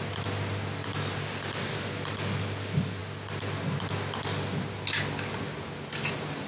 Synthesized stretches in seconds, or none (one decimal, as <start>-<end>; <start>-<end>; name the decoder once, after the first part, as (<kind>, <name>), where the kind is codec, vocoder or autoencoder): none

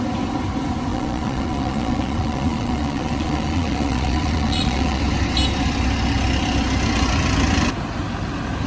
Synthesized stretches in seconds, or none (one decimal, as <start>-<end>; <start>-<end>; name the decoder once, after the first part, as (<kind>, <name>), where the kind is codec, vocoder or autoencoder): 0.9-5.0 (vocoder, Vocos)